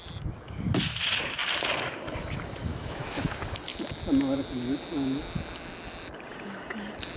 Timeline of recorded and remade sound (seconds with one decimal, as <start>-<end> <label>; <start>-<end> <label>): 0.0-2.7 recorded; 2.7-3.2 remade; 3.2-7.2 recorded